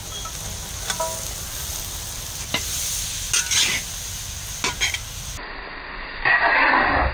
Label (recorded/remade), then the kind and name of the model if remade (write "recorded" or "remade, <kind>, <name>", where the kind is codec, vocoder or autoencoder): recorded